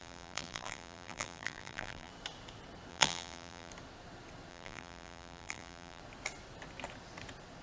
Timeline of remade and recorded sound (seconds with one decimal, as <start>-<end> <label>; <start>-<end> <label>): 0.0-2.1 remade; 2.1-2.9 recorded; 2.9-3.7 remade; 3.7-4.5 recorded; 4.5-6.0 remade; 6.0-7.6 recorded